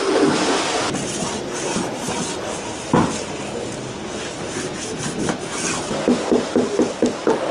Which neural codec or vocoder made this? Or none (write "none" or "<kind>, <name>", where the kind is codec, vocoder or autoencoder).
none